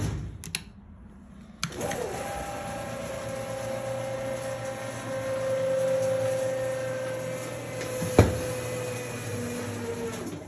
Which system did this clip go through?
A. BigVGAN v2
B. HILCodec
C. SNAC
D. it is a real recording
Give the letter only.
D